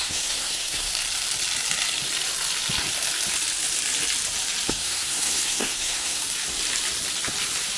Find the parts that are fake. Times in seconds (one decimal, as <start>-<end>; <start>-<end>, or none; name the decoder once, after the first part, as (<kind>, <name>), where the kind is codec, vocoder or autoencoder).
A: 0.0-0.9 (codec, SNAC); 4.7-6.2